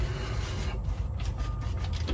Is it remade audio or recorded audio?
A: recorded